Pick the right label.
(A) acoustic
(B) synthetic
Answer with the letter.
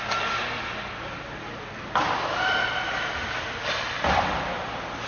A